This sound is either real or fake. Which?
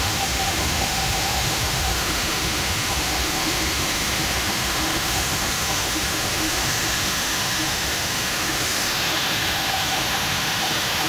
fake